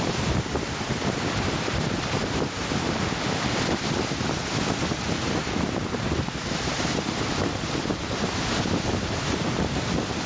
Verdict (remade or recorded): remade